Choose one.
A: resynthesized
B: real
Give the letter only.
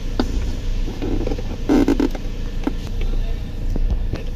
B